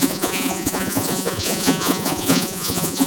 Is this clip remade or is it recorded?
remade